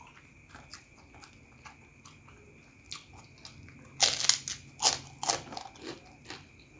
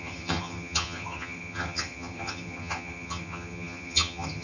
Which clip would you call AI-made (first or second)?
second